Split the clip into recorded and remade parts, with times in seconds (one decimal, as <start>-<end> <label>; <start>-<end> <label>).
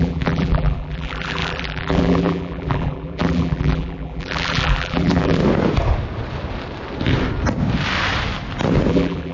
0.0-5.4 remade; 5.4-8.9 recorded; 8.9-9.3 remade